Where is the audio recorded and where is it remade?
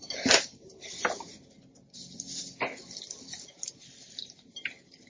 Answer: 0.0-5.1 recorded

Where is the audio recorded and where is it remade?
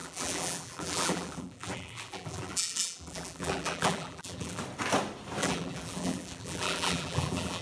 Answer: 0.0-4.6 remade; 4.6-5.4 recorded; 5.4-7.6 remade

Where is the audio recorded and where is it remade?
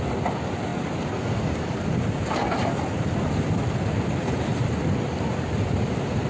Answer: 0.0-4.5 recorded; 4.5-5.1 remade; 5.1-6.3 recorded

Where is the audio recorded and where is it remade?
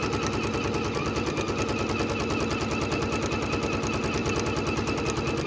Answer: 0.0-4.2 recorded; 4.2-5.0 remade; 5.0-5.5 recorded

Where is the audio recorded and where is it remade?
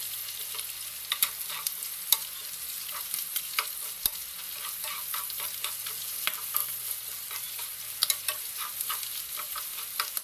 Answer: 0.0-6.6 recorded; 6.6-7.8 remade; 7.8-10.2 recorded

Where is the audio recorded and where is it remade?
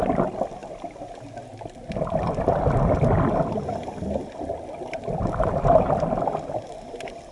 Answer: 0.0-7.3 recorded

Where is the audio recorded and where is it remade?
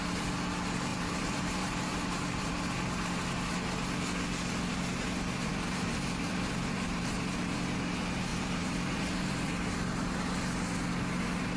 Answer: 0.0-0.9 recorded; 0.9-2.5 remade; 2.5-5.5 recorded; 5.5-7.4 remade; 7.4-8.3 recorded; 8.3-9.5 remade; 9.5-11.6 recorded